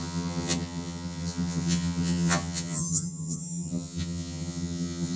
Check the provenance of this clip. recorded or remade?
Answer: remade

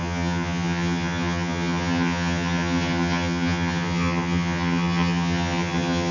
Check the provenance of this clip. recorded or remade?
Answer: remade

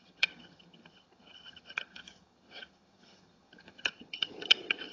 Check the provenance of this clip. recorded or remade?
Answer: remade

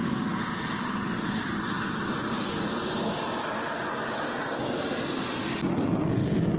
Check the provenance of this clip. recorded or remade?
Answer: recorded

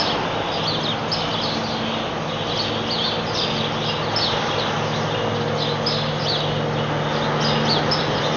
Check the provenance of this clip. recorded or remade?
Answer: recorded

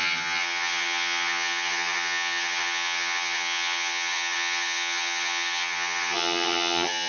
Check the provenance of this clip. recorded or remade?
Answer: remade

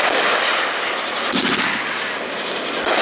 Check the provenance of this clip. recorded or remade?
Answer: recorded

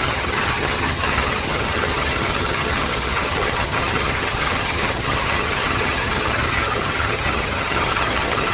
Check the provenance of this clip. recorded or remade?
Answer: remade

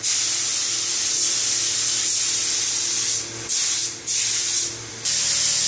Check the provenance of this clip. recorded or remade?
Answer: recorded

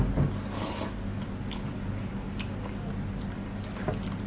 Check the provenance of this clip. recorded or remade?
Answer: recorded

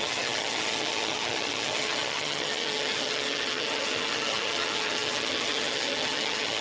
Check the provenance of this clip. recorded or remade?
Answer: remade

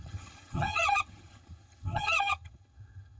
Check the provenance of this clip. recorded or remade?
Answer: remade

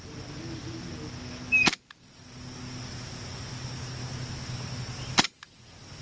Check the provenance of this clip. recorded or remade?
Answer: recorded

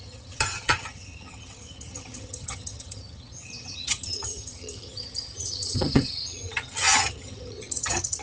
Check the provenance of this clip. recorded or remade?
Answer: remade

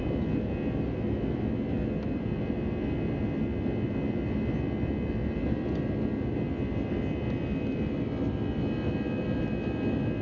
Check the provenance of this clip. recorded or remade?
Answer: recorded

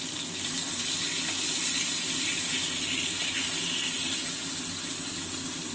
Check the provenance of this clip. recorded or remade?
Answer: recorded